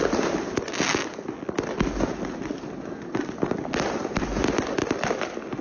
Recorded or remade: recorded